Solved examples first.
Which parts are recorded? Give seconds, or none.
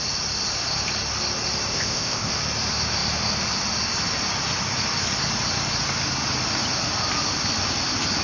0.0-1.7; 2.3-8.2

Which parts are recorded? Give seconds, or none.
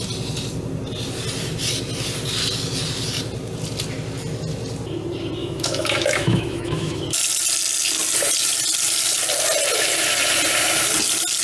0.0-5.4; 7.0-11.4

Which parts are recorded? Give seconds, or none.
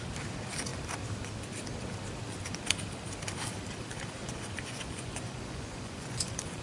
0.0-4.2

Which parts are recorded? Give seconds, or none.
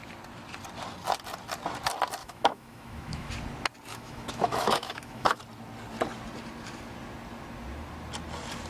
0.0-2.2; 3.3-3.9; 5.4-8.7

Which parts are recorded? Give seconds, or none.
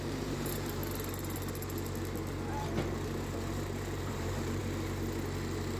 0.8-4.0; 4.6-5.8